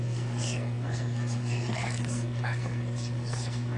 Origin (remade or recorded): remade